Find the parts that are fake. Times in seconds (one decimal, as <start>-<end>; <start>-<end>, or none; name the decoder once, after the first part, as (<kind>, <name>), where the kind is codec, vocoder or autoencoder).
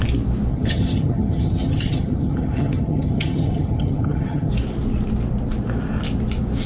0.5-4.5 (vocoder, HiFi-GAN)